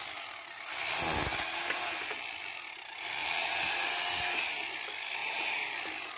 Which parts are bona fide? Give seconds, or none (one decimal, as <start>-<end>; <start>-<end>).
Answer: 0.0-6.2